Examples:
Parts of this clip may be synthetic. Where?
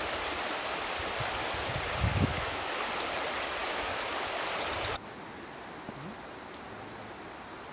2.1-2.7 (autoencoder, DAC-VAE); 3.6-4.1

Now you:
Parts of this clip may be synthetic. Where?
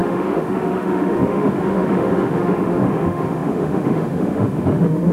0.0-5.1 (autoencoder, DAC-VAE)